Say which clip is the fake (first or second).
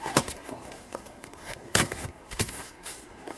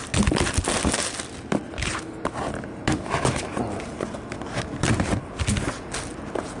first